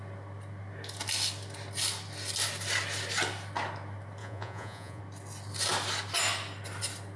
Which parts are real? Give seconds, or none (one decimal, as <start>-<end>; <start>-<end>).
0.0-4.2; 5.0-7.2